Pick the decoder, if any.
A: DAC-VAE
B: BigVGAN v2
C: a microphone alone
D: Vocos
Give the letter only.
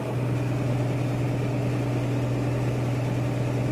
C